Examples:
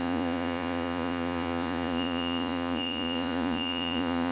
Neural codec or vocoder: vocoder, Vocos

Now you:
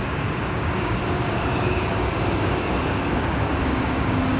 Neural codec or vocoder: codec, DAC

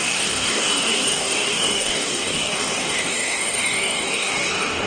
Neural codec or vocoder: codec, DAC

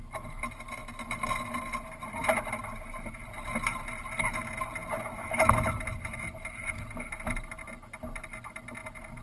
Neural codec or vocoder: none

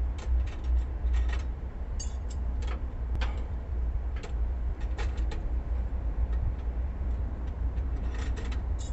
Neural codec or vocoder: vocoder, BigVGAN v2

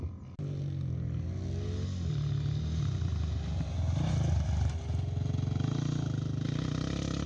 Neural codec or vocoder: none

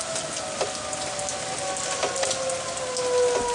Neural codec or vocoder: none